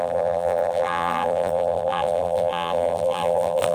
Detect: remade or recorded remade